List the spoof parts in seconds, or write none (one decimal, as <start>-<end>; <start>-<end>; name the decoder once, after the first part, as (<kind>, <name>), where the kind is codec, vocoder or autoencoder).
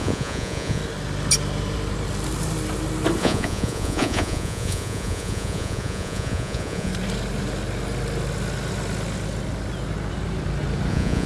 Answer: 0.0-0.8 (vocoder, Vocos); 3.2-6.9; 10.9-11.3